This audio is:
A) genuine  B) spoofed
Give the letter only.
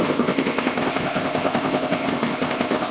B